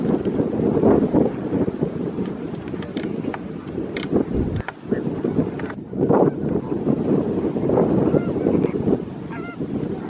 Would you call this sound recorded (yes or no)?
no